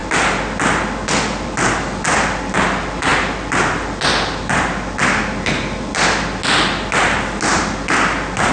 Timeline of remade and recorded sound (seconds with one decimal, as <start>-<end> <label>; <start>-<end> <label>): 0.0-8.5 recorded